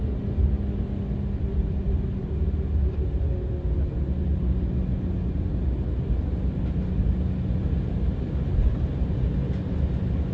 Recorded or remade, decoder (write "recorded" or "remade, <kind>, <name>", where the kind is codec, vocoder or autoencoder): recorded